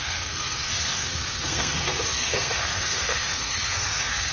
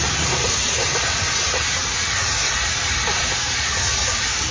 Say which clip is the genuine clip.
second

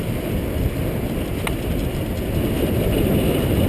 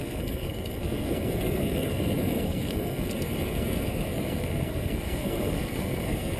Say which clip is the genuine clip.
first